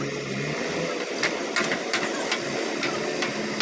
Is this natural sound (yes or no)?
yes